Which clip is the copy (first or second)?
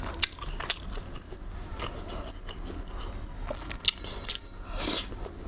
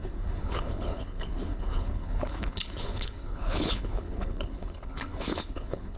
second